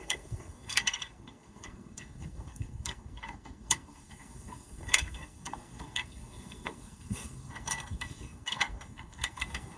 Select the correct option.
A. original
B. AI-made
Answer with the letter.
B